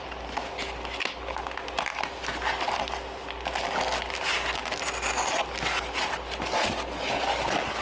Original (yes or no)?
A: yes